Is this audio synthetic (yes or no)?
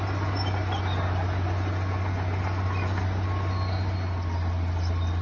no